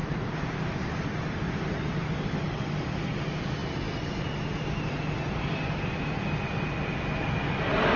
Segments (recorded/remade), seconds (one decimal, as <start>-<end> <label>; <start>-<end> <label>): 0.0-2.1 remade; 2.1-8.0 recorded